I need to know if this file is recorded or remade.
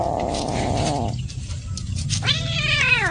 recorded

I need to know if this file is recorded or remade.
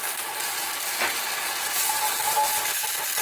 recorded